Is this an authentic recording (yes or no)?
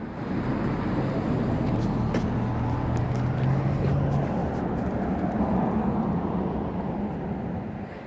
yes